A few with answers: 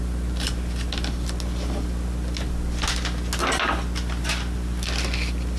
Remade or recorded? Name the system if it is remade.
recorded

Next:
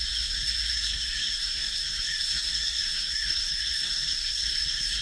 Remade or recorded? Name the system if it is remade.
remade, codec, SNAC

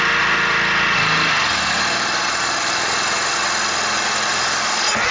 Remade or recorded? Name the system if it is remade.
recorded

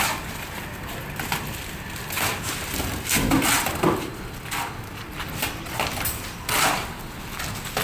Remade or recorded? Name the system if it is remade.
recorded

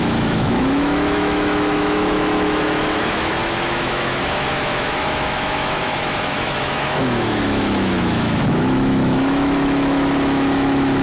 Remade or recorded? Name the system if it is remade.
remade, autoencoder, DAC-VAE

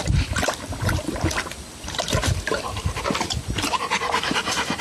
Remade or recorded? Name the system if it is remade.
remade, vocoder, BigVGAN v2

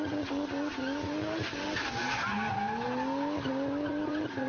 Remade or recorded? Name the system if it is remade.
recorded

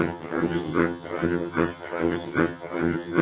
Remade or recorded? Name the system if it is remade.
remade, vocoder, HiFi-GAN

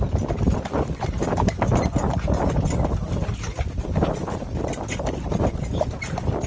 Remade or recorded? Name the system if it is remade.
recorded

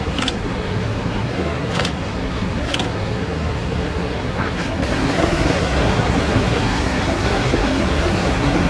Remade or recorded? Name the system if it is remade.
remade, codec, SNAC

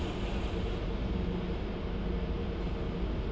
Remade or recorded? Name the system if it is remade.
recorded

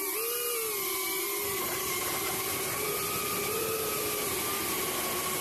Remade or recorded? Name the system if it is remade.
recorded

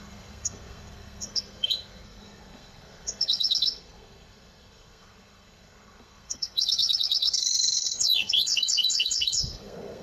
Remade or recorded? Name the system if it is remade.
remade, codec, SNAC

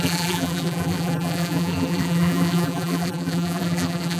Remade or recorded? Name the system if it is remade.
remade, vocoder, BigVGAN v2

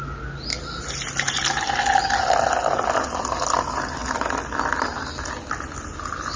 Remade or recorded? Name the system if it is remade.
recorded